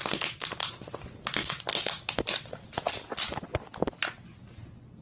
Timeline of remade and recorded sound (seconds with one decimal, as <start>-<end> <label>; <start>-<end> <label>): 0.0-5.0 recorded